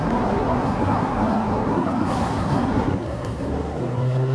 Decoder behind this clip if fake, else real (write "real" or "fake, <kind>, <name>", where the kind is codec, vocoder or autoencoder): fake, codec, SNAC